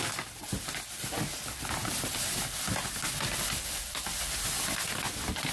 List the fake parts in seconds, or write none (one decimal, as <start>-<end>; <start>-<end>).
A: none